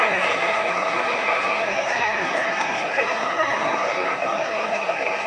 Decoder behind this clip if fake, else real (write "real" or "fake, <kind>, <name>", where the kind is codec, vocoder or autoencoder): fake, codec, SNAC